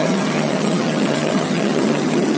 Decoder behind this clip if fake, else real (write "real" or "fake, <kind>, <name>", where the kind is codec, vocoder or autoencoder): fake, vocoder, HiFi-GAN